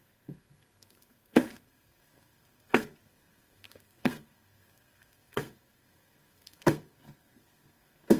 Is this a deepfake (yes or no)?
yes